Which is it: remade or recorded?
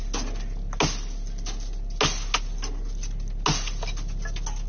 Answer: recorded